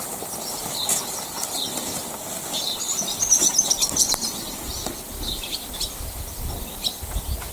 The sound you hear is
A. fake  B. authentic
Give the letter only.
B